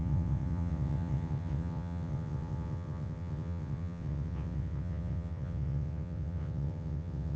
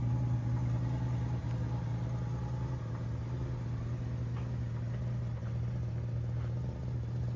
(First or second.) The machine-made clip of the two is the first